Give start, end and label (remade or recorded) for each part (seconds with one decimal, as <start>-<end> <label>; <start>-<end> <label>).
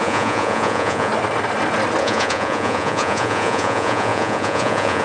0.0-1.1 remade; 1.1-2.0 recorded; 2.0-5.0 remade